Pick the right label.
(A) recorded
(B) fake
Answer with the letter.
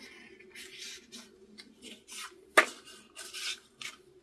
A